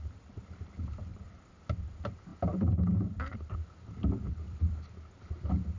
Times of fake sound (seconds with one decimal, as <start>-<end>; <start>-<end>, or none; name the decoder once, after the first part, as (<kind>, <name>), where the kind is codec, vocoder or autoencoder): none